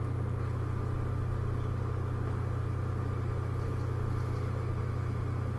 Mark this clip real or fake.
real